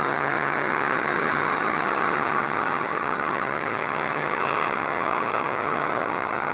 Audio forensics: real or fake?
fake